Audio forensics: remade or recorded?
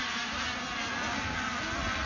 recorded